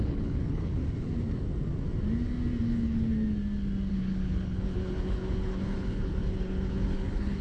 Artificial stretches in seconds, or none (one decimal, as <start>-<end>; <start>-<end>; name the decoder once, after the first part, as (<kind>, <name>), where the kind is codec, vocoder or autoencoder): 0.0-0.8 (codec, HILCodec); 2.6-3.1; 3.9-7.4